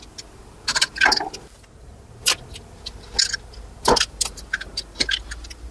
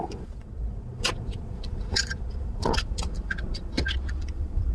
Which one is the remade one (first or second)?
second